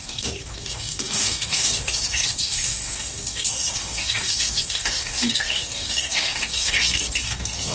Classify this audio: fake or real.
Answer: fake